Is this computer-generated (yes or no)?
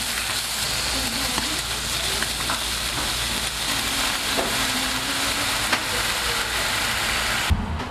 no